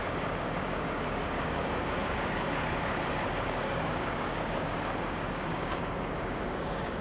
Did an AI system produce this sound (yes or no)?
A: yes